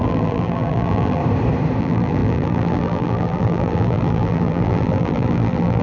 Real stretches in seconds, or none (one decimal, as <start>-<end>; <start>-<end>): 1.2-1.8